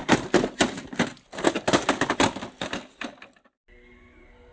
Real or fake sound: real